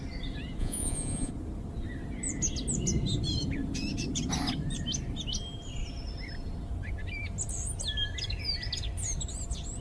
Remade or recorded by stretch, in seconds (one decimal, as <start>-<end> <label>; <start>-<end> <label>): 0.0-0.6 recorded; 0.6-1.3 remade; 1.3-9.8 recorded